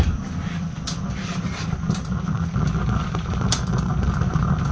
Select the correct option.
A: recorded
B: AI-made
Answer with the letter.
A